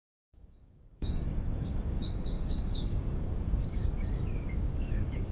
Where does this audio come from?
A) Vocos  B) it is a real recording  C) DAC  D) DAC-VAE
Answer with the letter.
C